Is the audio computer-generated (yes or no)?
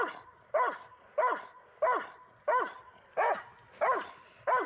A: no